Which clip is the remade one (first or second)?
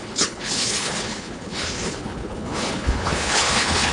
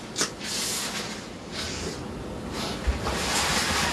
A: first